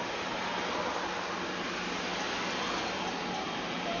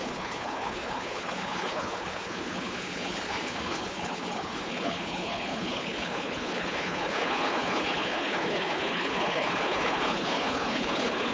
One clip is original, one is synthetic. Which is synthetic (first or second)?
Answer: second